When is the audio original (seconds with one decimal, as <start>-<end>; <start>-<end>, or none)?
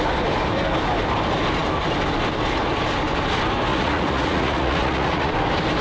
0.0-3.7; 5.3-5.8